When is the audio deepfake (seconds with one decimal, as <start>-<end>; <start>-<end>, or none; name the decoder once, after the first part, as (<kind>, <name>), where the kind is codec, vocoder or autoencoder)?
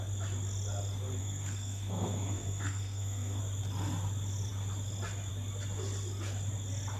1.2-3.4 (codec, SNAC)